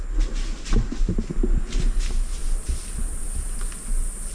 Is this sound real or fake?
real